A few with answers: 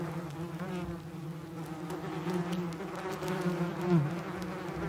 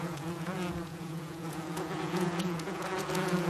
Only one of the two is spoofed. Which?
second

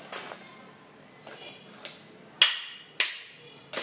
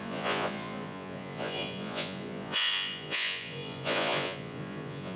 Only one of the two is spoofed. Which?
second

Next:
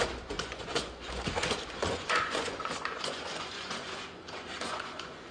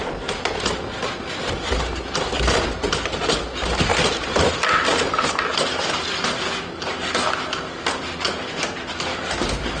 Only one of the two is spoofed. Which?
first